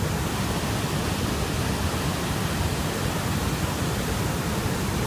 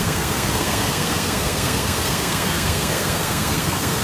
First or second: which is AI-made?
second